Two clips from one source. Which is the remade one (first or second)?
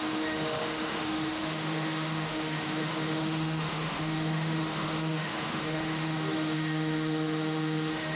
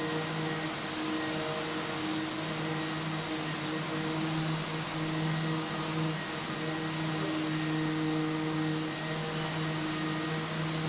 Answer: first